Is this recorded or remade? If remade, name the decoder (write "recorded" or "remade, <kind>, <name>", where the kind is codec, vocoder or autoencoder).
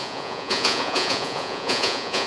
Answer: remade, vocoder, Vocos